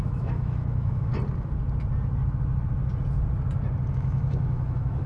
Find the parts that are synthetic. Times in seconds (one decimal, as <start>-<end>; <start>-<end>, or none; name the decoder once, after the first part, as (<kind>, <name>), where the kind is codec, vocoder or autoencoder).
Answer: 0.0-1.1 (autoencoder, DAC-VAE); 3.9-5.1